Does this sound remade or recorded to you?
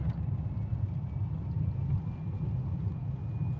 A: recorded